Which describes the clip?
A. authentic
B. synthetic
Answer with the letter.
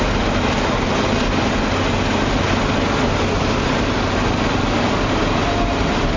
A